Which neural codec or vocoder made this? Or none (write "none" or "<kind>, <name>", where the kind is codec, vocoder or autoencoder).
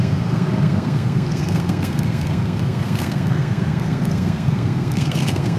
codec, SNAC